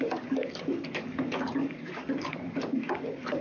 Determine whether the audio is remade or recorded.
remade